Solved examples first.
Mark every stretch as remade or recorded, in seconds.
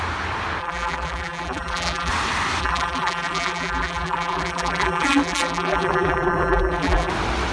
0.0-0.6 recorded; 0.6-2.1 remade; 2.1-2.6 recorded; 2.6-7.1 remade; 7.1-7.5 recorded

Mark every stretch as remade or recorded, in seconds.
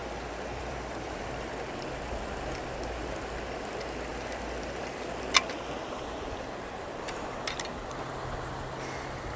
0.0-1.5 remade; 1.5-4.1 recorded; 4.1-4.8 remade; 4.8-9.4 recorded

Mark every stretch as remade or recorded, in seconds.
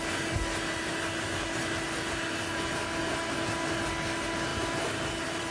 0.0-4.5 recorded; 4.5-5.5 remade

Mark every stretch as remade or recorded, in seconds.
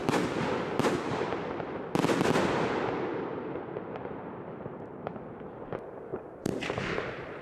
0.0-3.3 recorded; 3.3-5.3 remade; 5.3-6.1 recorded; 6.1-6.8 remade; 6.8-7.4 recorded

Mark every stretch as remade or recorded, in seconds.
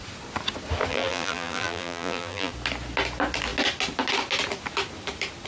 0.0-0.9 recorded; 0.9-2.5 remade; 2.5-5.5 recorded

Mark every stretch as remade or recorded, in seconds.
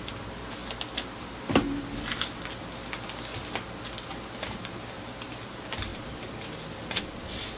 0.0-5.9 recorded; 5.9-7.0 remade; 7.0-7.6 recorded